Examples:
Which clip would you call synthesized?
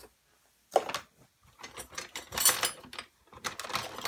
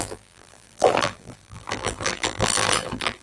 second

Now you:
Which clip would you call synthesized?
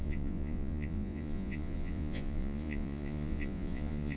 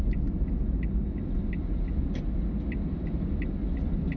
first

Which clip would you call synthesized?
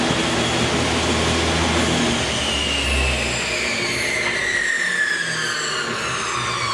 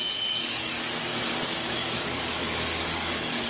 second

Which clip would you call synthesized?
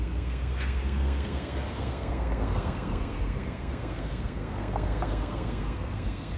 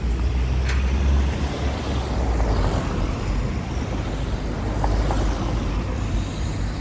first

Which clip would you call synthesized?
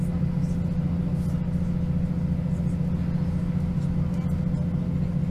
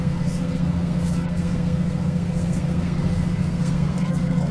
second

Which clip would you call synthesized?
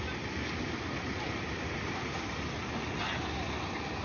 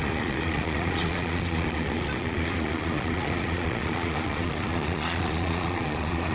second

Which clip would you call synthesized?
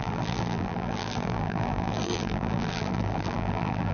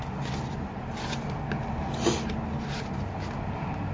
first